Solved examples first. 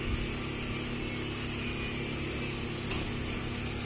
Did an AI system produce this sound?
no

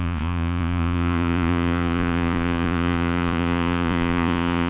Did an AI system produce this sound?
yes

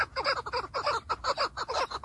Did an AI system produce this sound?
no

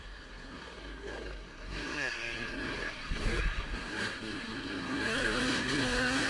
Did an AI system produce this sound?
yes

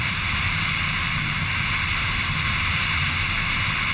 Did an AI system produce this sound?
yes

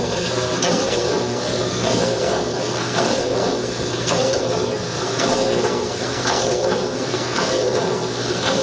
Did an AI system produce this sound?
yes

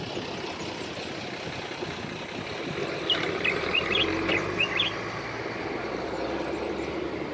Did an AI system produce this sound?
no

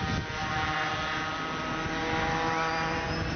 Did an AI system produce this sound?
no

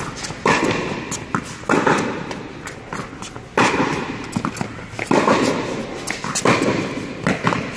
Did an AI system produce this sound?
no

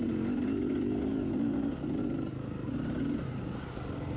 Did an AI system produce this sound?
no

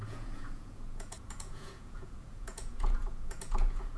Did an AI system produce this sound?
yes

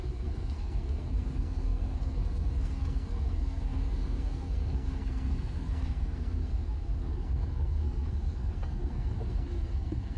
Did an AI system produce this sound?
yes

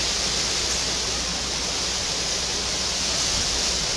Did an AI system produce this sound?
no